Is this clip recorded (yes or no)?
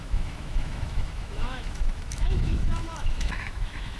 no